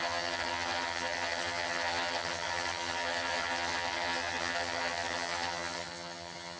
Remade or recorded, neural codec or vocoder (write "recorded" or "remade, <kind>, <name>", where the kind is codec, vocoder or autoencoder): remade, vocoder, HiFi-GAN